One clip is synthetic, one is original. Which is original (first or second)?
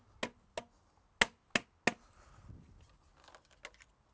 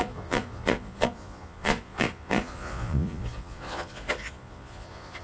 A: first